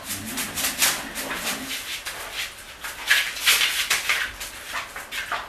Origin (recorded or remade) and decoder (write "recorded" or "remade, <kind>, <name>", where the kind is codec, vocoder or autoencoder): recorded